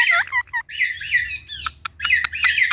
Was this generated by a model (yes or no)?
no